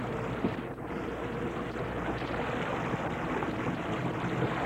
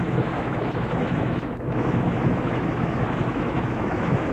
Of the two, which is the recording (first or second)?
first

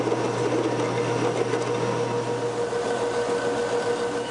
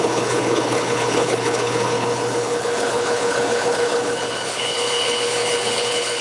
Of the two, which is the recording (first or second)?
first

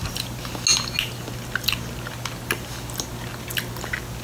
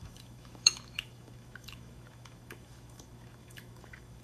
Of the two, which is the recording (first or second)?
first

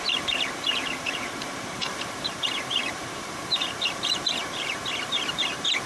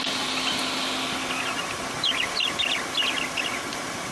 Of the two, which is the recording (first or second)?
second